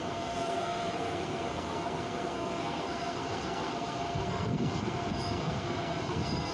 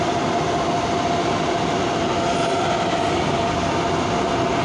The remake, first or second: first